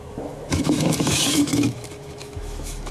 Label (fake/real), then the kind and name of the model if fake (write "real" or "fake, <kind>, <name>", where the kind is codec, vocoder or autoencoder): fake, autoencoder, DAC-VAE